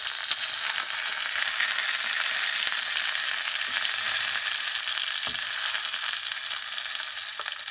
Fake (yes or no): no